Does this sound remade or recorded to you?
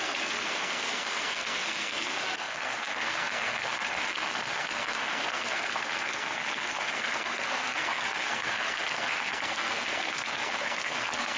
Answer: remade